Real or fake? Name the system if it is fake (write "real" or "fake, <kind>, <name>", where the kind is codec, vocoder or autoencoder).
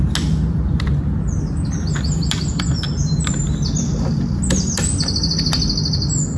real